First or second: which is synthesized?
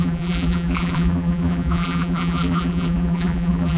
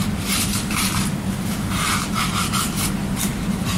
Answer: first